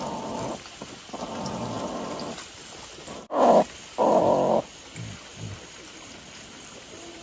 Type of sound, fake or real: real